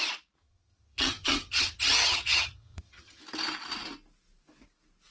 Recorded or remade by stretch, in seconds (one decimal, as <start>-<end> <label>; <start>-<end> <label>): 0.0-0.4 recorded; 0.4-3.2 remade; 3.2-5.1 recorded